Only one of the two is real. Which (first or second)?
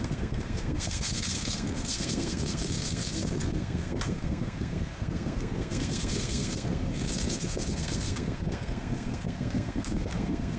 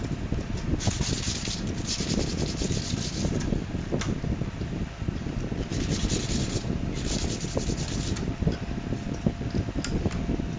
second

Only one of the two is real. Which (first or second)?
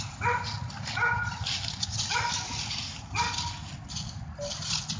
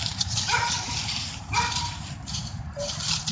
first